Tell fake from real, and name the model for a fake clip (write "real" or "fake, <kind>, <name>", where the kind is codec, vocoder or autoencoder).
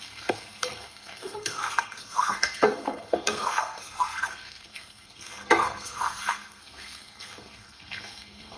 fake, codec, SNAC